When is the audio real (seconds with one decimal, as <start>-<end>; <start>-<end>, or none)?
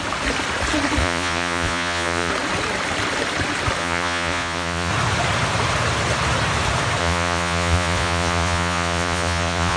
0.0-1.0; 2.3-3.8; 4.9-7.0